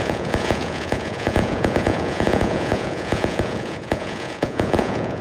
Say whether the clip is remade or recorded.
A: remade